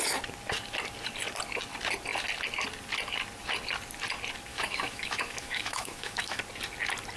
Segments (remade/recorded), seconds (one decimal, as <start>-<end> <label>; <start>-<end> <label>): 0.0-4.5 recorded; 4.5-6.4 remade; 6.4-7.2 recorded